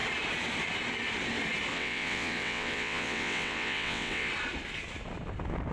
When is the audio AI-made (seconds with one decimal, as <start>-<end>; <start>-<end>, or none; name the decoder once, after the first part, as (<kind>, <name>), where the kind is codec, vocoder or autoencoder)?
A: 1.7-4.3 (vocoder, WaveNeXt)